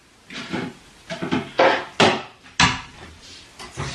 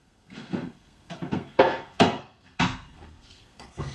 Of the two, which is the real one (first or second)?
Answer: first